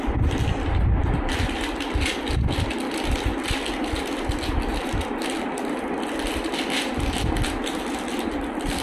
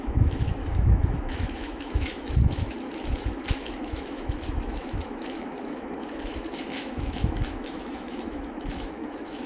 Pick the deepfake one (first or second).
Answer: second